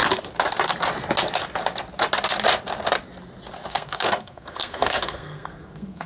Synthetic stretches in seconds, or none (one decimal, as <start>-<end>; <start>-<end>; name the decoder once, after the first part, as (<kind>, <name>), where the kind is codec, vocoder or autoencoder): 3.7-6.1 (codec, SNAC)